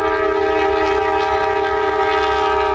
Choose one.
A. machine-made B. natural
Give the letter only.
B